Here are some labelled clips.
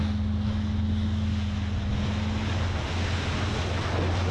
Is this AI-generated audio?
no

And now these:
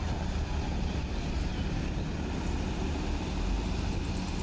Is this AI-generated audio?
no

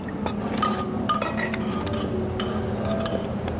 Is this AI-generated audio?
no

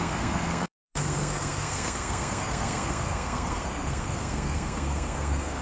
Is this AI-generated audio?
yes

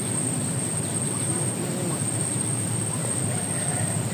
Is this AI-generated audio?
no